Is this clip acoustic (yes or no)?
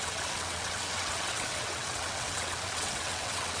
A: no